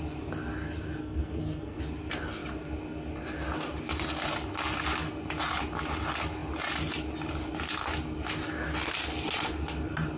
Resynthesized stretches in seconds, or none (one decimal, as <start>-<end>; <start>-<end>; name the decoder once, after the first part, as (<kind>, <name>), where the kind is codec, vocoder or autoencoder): 1.0-1.8 (codec, SNAC)

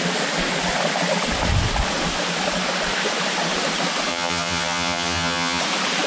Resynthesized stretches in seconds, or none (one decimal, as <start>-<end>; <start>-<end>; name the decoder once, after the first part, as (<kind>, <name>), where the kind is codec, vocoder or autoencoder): 4.1-5.6 (vocoder, HiFi-GAN)

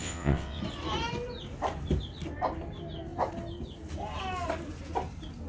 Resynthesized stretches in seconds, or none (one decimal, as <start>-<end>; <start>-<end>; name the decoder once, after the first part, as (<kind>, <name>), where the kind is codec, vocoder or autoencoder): 0.0-0.6 (vocoder, WaveNeXt)

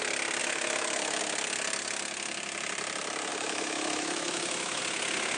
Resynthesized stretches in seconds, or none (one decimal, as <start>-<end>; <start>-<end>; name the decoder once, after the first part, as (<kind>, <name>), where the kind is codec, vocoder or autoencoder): 0.4-1.2 (autoencoder, DAC-VAE); 3.3-4.8

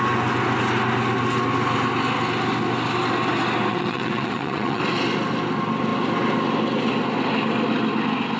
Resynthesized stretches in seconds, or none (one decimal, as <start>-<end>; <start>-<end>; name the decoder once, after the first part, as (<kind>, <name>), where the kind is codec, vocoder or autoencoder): 3.7-4.8 (vocoder, WaveNeXt)

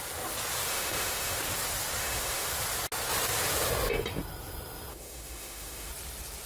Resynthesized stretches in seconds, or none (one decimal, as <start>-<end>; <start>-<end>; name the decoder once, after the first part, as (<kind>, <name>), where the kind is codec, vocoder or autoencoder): 0.7-1.4 (autoencoder, DAC-VAE); 2.0-2.5; 4.9-5.9